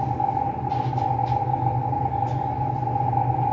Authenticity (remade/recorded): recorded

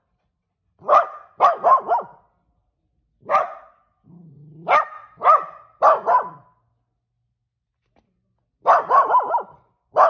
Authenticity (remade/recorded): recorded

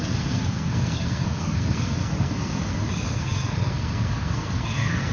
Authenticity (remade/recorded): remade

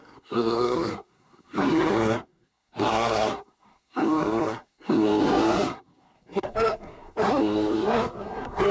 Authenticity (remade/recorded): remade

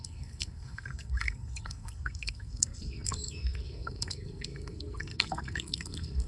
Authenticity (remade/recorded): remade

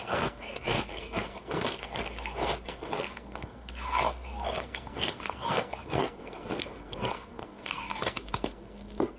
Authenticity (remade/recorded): remade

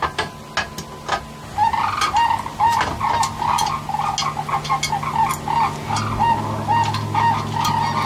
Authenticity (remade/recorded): recorded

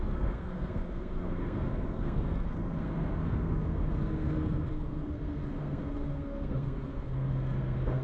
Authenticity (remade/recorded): remade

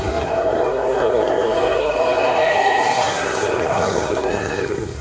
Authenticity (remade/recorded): remade